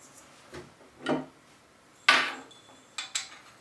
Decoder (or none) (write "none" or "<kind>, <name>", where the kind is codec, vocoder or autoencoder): none